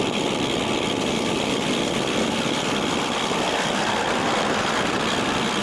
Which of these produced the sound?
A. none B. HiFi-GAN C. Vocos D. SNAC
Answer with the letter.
A